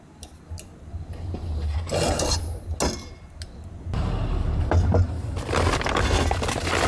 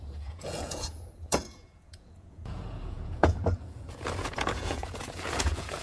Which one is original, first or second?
first